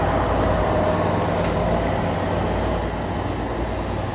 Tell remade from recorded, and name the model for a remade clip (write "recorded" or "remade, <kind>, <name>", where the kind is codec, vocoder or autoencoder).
recorded